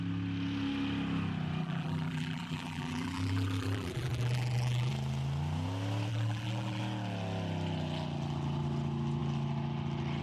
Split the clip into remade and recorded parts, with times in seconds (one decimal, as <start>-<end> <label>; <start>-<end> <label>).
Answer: 0.0-1.6 recorded; 1.6-4.9 remade; 4.9-6.1 recorded; 6.1-6.8 remade; 6.8-10.2 recorded